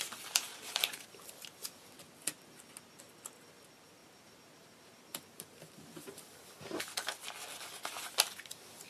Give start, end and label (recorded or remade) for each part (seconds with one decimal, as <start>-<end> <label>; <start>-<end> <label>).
0.0-0.5 recorded; 0.5-1.2 remade; 1.2-4.0 recorded; 4.0-6.8 remade; 6.8-8.9 recorded